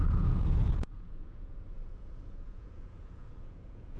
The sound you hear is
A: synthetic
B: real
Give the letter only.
A